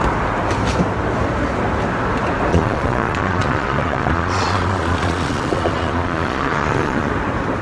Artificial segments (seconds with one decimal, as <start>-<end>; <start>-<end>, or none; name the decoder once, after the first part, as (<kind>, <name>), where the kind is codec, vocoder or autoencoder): 2.5-7.1 (vocoder, Vocos)